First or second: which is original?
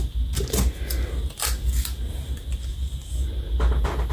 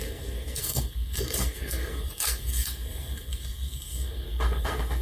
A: first